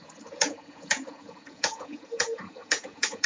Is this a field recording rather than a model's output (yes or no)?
no